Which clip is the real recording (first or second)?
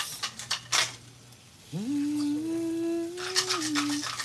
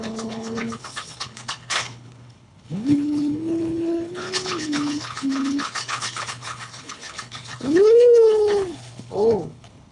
first